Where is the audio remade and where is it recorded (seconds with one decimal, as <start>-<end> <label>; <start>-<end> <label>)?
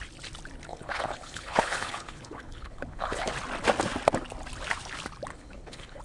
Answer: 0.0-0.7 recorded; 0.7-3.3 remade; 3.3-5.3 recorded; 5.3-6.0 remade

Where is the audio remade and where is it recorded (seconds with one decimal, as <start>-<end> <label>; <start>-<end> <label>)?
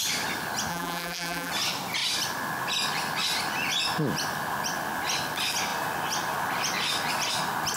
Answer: 0.0-0.7 recorded; 0.7-1.5 remade; 1.5-7.8 recorded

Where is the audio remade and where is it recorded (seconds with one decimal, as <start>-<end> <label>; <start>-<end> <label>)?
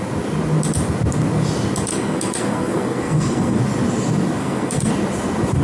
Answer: 0.0-1.9 recorded; 1.9-3.6 remade; 3.6-4.4 recorded; 4.4-4.9 remade; 4.9-5.6 recorded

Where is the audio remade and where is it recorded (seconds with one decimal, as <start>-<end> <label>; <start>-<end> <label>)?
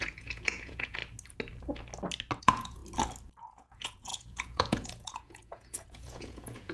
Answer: 0.0-1.0 remade; 1.0-2.4 recorded; 2.4-2.8 remade; 2.8-3.4 recorded; 3.4-6.7 remade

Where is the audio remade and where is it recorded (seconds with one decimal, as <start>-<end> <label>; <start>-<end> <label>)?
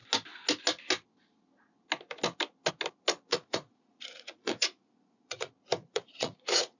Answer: 0.0-3.3 recorded; 3.3-5.5 remade; 5.5-5.9 recorded; 5.9-6.8 remade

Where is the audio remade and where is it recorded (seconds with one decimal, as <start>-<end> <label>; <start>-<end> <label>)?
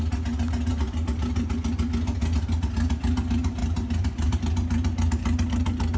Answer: 0.0-0.7 recorded; 0.7-1.5 remade; 1.5-3.6 recorded; 3.6-4.4 remade; 4.4-6.0 recorded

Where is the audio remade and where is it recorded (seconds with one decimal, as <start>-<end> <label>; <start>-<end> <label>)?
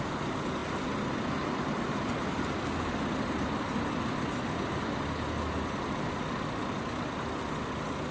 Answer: 0.0-0.6 recorded; 0.6-2.5 remade; 2.5-8.1 recorded